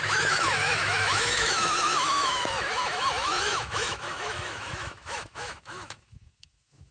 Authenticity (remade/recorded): remade